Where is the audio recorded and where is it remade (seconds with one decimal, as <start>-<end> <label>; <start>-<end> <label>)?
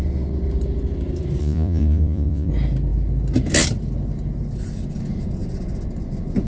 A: 0.0-1.4 recorded; 1.4-2.5 remade; 2.5-6.5 recorded